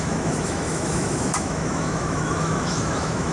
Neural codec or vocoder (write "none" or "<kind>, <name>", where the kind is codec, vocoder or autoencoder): autoencoder, DAC-VAE